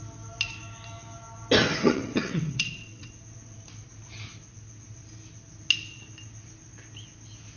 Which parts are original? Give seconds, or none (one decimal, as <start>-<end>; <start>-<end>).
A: 0.0-1.6; 3.1-7.6